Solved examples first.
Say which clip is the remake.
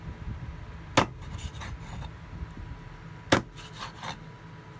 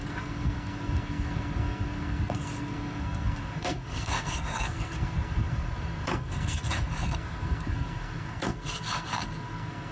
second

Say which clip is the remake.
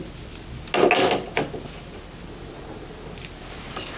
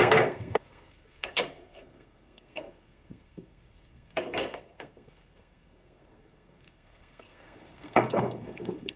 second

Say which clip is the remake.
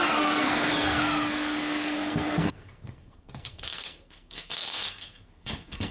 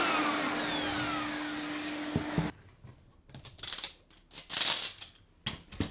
first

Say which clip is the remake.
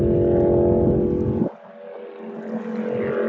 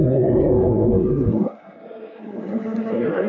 second